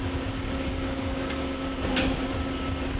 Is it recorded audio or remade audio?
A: recorded